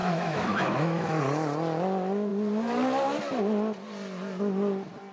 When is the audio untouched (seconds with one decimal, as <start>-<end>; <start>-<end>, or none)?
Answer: 1.2-5.1